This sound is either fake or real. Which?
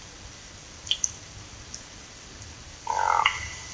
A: real